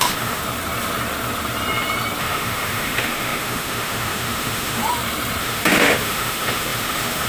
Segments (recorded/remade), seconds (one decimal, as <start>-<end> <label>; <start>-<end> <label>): 0.0-0.4 remade; 0.4-2.2 recorded; 2.2-4.8 remade; 4.8-5.4 recorded; 5.4-7.3 remade